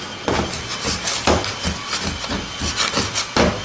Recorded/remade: recorded